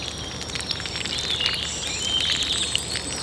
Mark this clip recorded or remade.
recorded